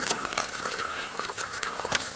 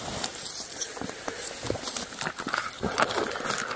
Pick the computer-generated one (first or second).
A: first